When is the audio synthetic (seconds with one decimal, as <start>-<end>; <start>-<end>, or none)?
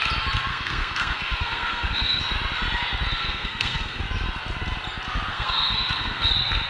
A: 0.5-2.2; 3.2-4.0; 5.3-6.3